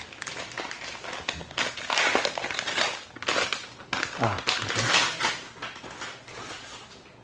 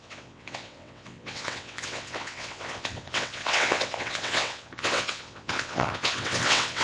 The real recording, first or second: first